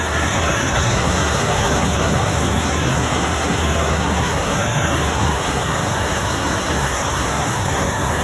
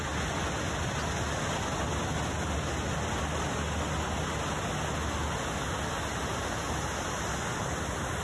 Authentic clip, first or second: second